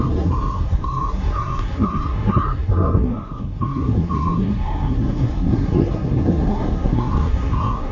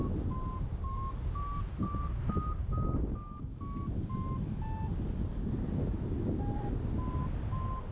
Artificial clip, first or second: first